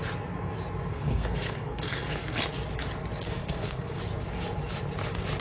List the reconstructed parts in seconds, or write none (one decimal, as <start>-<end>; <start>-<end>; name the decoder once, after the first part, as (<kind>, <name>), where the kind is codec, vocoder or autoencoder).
0.9-2.4 (codec, SNAC); 3.4-4.0